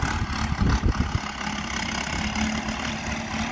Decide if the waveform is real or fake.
real